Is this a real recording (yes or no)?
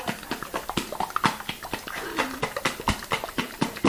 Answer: no